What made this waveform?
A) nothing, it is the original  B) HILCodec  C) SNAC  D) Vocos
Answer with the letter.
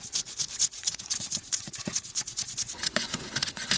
D